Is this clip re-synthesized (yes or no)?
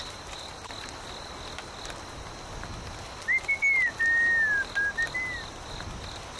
no